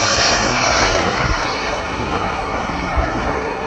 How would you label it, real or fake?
fake